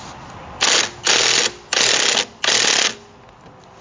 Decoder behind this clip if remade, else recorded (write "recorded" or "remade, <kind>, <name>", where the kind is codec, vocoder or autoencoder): recorded